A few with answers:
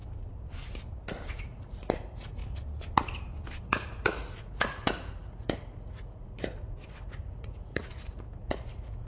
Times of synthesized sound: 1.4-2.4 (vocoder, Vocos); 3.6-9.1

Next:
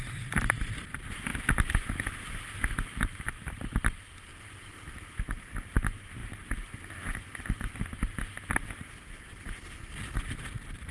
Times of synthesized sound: none